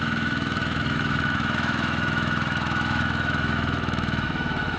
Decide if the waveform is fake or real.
fake